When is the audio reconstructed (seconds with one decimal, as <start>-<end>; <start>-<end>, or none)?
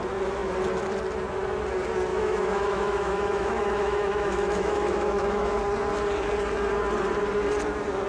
2.1-5.6